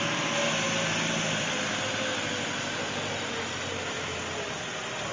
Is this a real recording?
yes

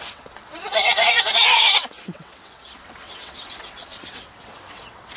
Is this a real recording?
no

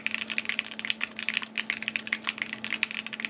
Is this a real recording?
yes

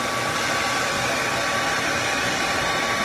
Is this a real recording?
yes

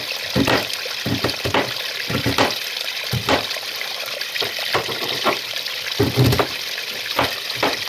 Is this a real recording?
no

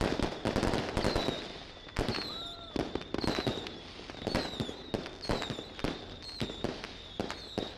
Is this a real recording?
yes